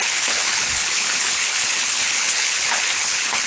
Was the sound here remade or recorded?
remade